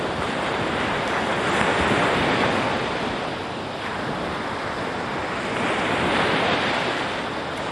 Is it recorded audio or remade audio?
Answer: recorded